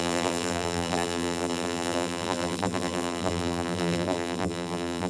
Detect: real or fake fake